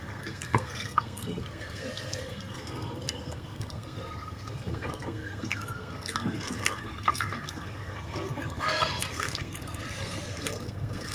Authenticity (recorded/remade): remade